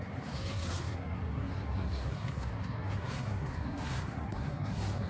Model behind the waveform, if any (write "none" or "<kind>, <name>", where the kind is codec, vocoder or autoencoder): codec, SNAC